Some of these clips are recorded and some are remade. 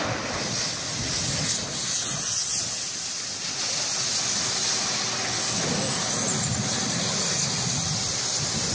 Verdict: recorded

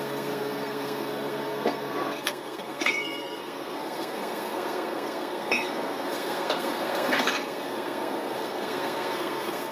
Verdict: remade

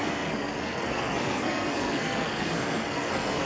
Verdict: remade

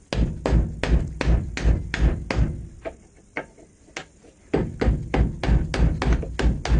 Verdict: recorded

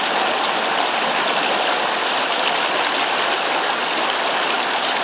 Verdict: recorded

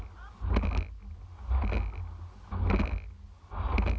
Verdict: recorded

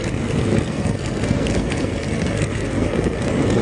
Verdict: remade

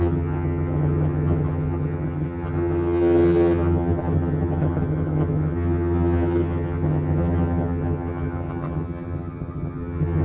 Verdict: remade